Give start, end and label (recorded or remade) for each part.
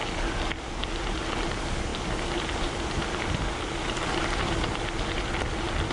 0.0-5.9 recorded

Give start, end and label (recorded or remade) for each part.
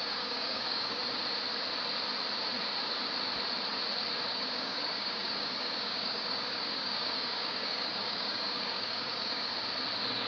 0.0-1.0 remade; 1.0-4.3 recorded; 4.3-9.5 remade; 9.5-10.3 recorded